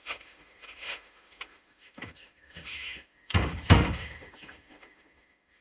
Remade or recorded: remade